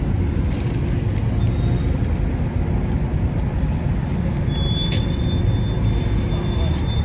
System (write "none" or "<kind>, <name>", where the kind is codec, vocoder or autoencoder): none